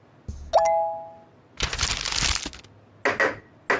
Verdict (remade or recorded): recorded